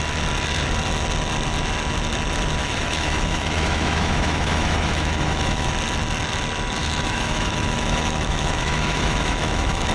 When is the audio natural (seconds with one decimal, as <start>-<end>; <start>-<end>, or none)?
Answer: 0.0-2.6; 5.7-6.8